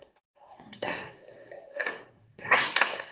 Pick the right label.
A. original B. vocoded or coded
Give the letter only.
B